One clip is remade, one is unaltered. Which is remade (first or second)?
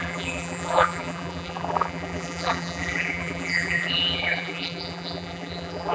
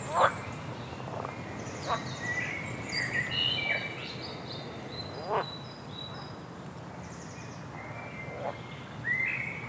first